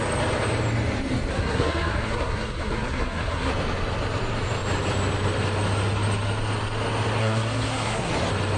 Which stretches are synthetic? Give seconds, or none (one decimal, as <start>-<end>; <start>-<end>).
1.3-3.5; 7.2-8.1